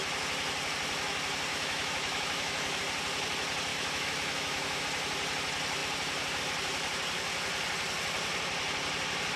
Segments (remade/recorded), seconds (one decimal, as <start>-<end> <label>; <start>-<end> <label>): 0.0-1.5 recorded; 1.5-2.8 remade; 2.8-3.7 recorded; 3.7-4.8 remade; 4.8-9.4 recorded